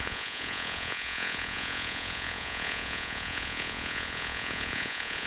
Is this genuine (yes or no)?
no